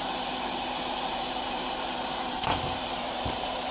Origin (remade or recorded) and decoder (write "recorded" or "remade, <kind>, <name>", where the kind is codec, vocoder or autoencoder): remade, vocoder, BigVGAN v2